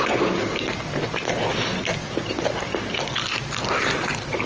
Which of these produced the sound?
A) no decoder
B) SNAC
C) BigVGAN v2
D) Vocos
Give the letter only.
A